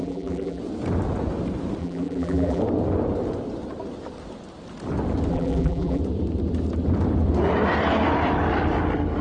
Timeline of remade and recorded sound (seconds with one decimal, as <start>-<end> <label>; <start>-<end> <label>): 0.0-0.6 remade; 0.6-1.8 recorded; 1.8-2.6 remade; 2.6-5.3 recorded; 5.3-6.0 remade; 6.0-9.2 recorded

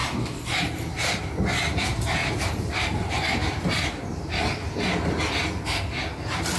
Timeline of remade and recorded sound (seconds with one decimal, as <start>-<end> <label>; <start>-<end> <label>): 0.0-1.2 remade; 1.2-2.2 recorded; 2.2-4.4 remade; 4.4-6.6 recorded

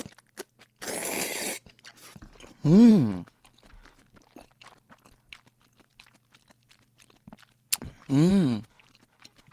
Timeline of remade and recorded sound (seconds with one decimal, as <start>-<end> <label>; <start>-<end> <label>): 0.0-9.5 recorded